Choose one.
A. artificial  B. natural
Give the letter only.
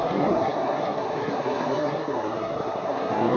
A